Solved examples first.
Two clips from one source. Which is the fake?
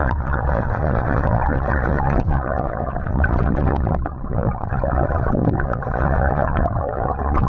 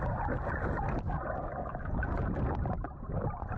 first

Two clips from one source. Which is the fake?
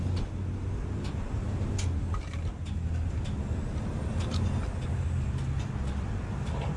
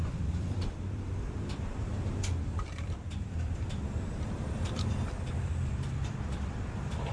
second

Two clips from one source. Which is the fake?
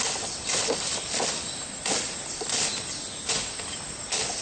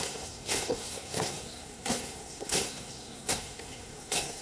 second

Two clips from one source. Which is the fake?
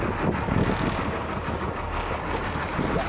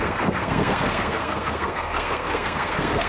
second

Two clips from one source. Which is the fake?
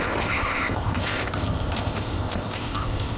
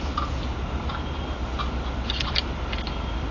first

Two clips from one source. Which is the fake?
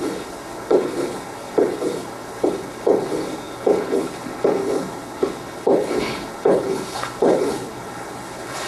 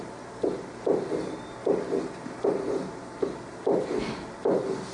first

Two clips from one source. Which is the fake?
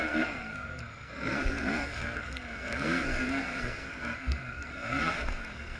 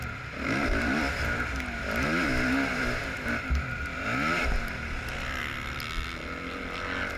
first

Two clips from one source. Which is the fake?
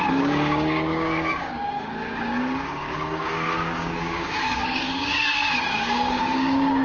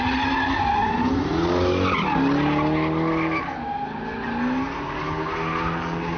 first